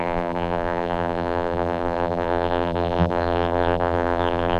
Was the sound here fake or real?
fake